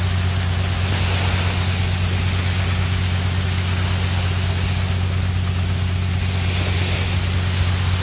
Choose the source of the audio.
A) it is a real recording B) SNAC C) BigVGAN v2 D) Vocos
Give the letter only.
A